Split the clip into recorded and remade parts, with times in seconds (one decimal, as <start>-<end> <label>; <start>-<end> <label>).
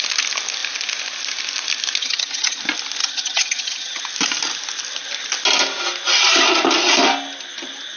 0.0-2.0 recorded; 2.0-2.6 remade; 2.6-3.0 recorded; 3.0-4.0 remade; 4.0-8.0 recorded